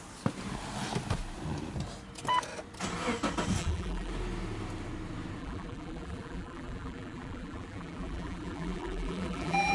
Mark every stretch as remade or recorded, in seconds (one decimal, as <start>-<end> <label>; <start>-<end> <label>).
0.0-3.6 recorded; 3.6-4.1 remade; 4.1-5.4 recorded; 5.4-9.7 remade